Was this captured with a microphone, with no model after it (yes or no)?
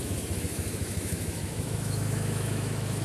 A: no